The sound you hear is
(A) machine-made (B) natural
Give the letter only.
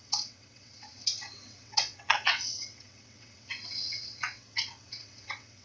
A